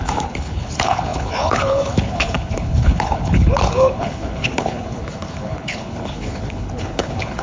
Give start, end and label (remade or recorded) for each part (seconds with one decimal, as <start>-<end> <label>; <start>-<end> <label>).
0.0-7.4 remade